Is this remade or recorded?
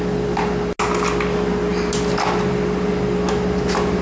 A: recorded